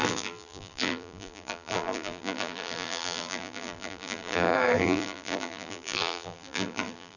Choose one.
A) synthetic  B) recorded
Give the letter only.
A